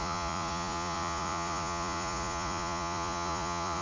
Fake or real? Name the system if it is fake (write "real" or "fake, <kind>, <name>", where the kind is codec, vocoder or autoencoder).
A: fake, vocoder, Vocos